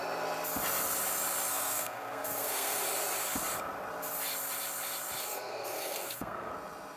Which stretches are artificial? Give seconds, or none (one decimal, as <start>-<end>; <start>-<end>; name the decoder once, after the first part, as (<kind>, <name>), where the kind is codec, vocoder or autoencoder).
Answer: 1.5-2.8 (codec, SNAC); 5.2-6.5